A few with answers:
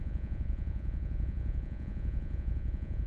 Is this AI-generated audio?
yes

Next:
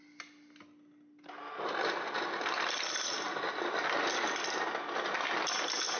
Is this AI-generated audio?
no